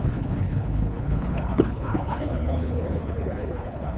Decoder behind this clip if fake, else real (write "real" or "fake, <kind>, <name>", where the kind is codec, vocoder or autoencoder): fake, codec, HILCodec